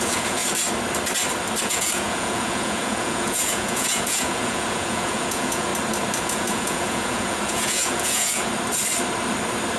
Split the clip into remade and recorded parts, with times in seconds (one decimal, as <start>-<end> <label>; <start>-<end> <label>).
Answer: 0.0-0.4 remade; 0.4-1.6 recorded; 1.6-5.7 remade; 5.7-6.2 recorded; 6.2-8.5 remade; 8.5-9.8 recorded